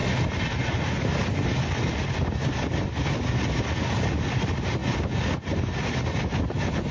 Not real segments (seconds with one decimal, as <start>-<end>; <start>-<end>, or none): none